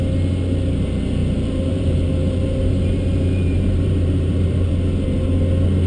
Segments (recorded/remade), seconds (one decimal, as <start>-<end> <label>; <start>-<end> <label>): 0.0-1.2 recorded; 1.2-4.7 remade; 4.7-5.9 recorded